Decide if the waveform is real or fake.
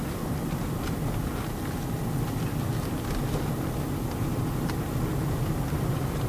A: real